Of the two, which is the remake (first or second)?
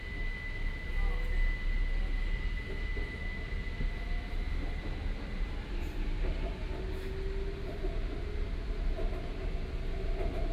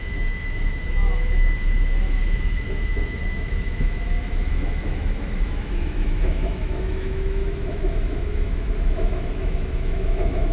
second